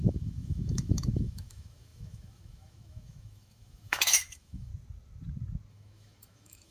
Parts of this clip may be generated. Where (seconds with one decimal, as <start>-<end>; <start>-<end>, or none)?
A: 0.0-4.7; 5.7-6.7